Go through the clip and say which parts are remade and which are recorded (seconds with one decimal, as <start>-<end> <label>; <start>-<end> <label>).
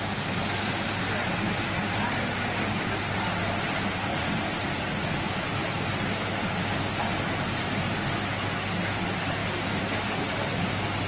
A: 0.0-4.1 recorded; 4.1-5.3 remade; 5.3-11.1 recorded